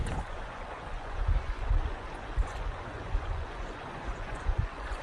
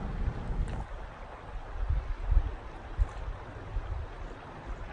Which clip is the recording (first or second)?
second